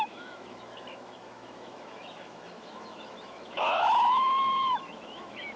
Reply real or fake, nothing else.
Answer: fake